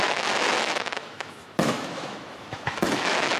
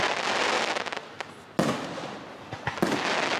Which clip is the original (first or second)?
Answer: second